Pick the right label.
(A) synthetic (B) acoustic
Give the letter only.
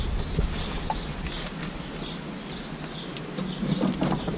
B